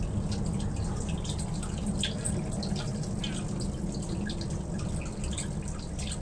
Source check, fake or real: real